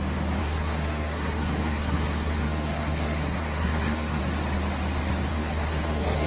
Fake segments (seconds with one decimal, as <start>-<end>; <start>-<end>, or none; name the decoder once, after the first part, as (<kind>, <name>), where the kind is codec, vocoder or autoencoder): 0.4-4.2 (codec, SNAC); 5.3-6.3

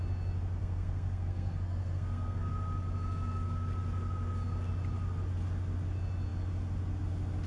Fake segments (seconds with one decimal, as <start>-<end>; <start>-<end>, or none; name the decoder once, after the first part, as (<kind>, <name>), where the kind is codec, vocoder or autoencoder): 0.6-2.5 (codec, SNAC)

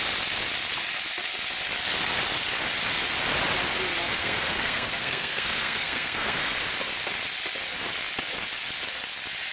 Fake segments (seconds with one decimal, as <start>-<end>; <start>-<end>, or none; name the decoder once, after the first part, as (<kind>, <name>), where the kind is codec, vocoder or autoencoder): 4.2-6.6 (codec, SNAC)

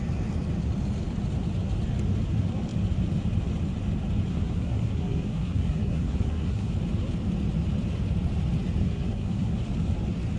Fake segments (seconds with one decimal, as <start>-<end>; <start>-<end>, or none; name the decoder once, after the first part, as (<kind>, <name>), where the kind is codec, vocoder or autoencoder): 4.3-6.7 (codec, SNAC); 8.8-9.6